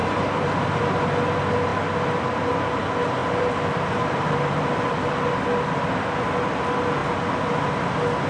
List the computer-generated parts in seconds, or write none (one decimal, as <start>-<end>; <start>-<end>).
0.0-0.8; 3.2-5.2